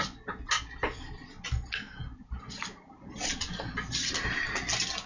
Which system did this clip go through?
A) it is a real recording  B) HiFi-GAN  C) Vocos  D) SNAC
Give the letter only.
A